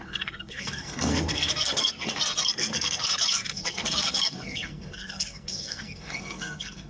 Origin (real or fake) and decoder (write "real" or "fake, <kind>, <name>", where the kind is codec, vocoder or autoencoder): fake, codec, SNAC